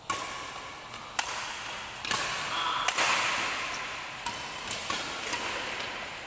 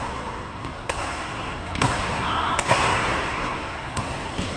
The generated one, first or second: second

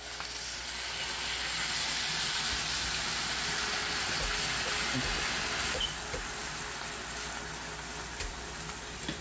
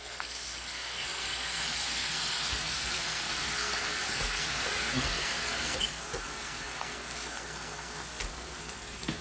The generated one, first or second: second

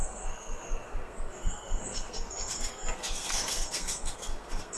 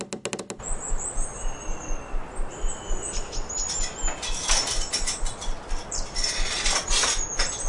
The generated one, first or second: first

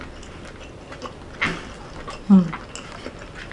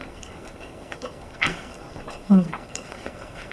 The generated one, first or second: second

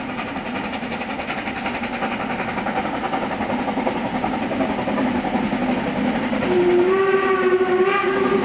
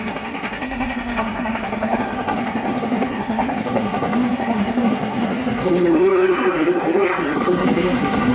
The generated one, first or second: second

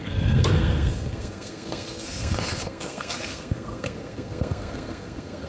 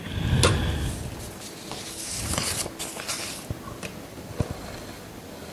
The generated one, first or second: first